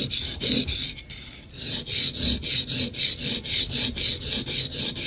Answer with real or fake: real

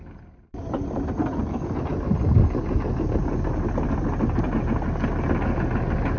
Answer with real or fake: real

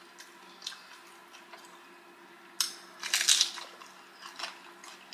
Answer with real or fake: real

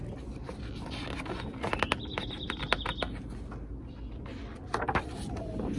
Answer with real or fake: real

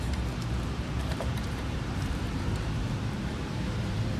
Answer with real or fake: fake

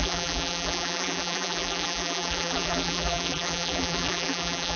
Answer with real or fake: fake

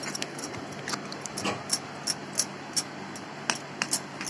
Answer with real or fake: real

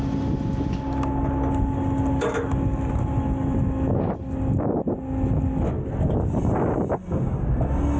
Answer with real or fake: real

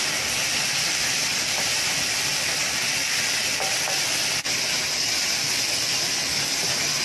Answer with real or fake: fake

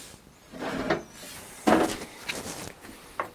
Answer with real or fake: real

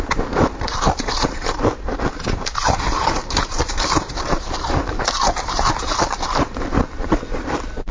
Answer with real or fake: fake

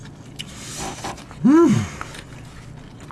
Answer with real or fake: real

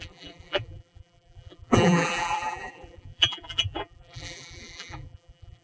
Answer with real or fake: fake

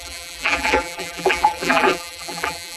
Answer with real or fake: fake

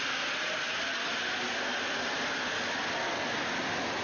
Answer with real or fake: real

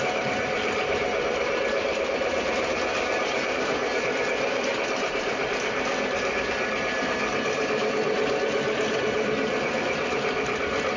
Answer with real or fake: fake